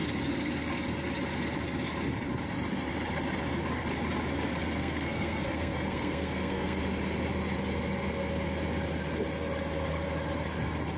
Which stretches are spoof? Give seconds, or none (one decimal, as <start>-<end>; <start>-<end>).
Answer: 4.8-6.8

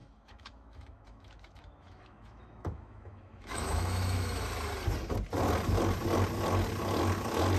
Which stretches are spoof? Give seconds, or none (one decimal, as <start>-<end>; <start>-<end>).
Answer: 0.0-4.4

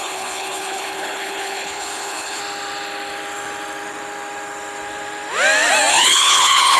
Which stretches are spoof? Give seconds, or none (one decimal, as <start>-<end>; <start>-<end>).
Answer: 0.0-2.4; 5.9-6.8

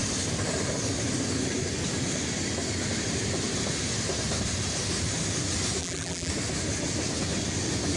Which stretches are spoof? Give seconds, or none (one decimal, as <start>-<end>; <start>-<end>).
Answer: 5.8-6.3